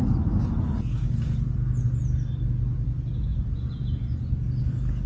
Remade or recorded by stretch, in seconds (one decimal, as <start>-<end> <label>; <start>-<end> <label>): 0.0-3.3 recorded; 3.3-3.8 remade; 3.8-5.1 recorded

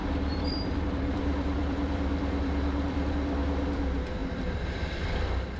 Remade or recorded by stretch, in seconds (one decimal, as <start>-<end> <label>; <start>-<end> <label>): 0.0-3.1 remade; 3.1-5.6 recorded

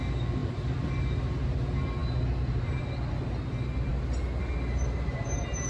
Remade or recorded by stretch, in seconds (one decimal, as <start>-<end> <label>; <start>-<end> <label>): 0.0-5.7 recorded